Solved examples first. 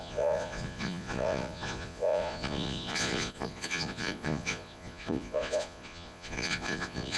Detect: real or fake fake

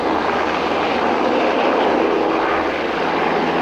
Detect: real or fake real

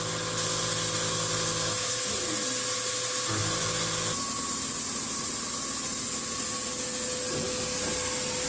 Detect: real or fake real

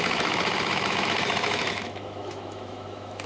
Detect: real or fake fake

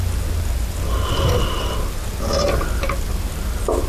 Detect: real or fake real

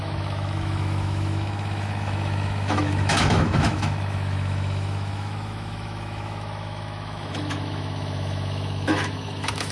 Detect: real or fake fake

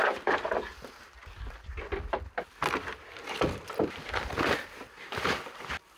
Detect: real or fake real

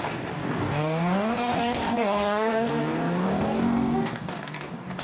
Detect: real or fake fake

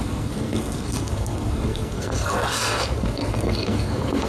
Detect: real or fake fake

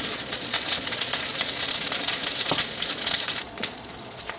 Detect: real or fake fake